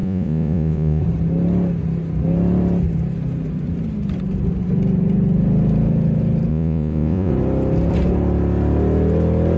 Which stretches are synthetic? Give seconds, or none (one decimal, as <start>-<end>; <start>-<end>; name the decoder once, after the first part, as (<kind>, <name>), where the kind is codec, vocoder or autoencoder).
0.0-1.0 (vocoder, Vocos); 6.5-7.3